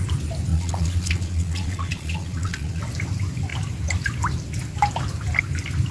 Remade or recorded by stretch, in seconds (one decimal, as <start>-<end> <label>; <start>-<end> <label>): 0.0-0.5 recorded; 0.5-2.8 remade; 2.8-5.9 recorded

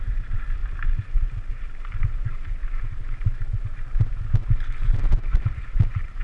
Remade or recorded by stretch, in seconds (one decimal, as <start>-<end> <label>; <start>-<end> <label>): 0.0-0.6 remade; 0.6-1.5 recorded; 1.5-4.4 remade; 4.4-5.3 recorded; 5.3-6.2 remade

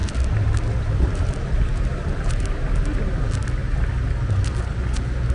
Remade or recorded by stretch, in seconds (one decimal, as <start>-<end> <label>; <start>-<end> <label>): 0.0-5.3 recorded

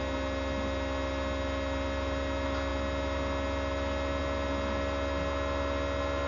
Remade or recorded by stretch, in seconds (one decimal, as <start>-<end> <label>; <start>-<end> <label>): 0.0-6.3 recorded

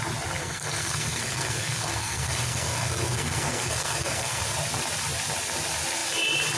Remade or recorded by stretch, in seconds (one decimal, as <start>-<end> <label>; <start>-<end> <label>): 0.0-0.4 recorded; 0.4-4.4 remade; 4.4-6.6 recorded

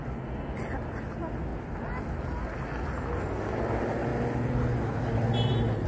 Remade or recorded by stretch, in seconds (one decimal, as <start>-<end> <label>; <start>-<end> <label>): 0.0-5.9 recorded